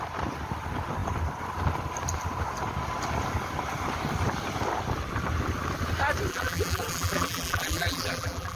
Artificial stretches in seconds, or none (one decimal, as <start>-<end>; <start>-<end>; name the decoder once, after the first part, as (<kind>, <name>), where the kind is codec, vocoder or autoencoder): 6.3-8.6 (vocoder, BigVGAN v2)